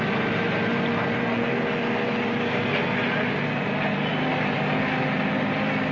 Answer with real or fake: real